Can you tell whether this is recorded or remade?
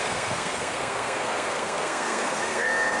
remade